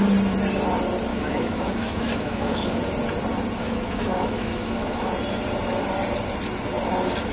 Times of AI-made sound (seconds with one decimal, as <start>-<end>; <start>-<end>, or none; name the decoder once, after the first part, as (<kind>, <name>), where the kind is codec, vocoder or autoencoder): 1.1-2.8 (autoencoder, DAC-VAE); 3.6-5.1